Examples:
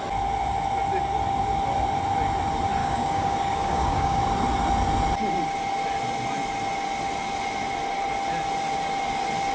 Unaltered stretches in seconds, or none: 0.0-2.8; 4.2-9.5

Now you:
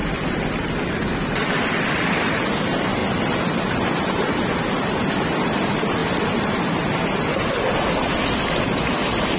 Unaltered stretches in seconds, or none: 2.3-3.0; 4.7-6.0; 6.6-9.4

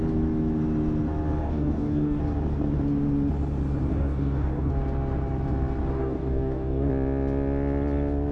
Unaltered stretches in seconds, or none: 0.0-1.4; 2.2-3.9; 4.7-6.0; 6.9-8.3

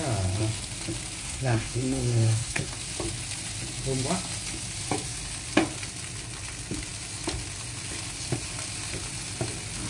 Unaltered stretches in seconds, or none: 0.0-1.2; 2.7-9.9

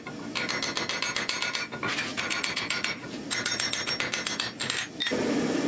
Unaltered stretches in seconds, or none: 0.0-2.1; 3.9-5.7

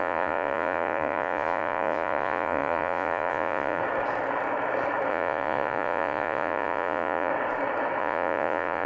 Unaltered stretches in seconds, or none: 3.8-5.1; 7.3-8.0

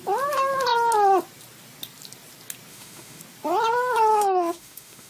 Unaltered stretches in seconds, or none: 0.0-2.7; 3.2-4.1

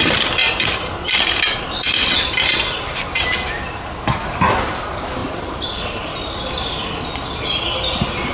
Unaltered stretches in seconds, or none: 0.0-0.4; 0.9-8.3